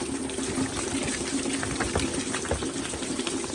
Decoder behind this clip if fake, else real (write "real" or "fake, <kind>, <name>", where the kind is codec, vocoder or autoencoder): real